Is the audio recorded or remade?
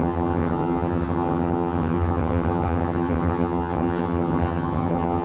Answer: remade